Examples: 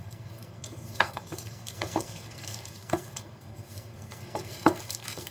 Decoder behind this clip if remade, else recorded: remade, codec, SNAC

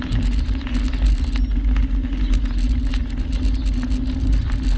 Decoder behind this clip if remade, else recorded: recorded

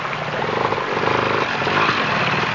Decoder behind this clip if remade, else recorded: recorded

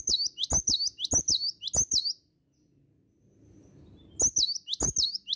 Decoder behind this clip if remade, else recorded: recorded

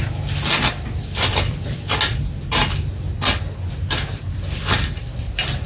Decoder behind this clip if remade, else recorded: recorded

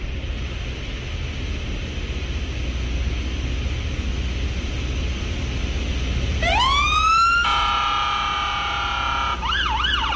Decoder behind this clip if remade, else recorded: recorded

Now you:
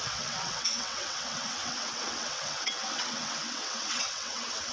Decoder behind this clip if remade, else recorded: remade, vocoder, WaveNeXt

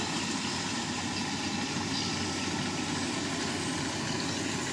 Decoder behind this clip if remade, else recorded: recorded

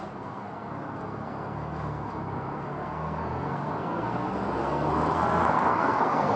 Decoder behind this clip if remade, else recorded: remade, codec, SNAC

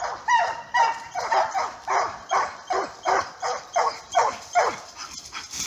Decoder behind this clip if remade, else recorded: remade, vocoder, BigVGAN v2